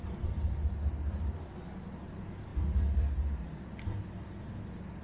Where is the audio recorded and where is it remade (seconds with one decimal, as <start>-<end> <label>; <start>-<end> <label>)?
0.0-5.0 recorded